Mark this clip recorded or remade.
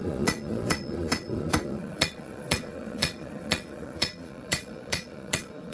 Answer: remade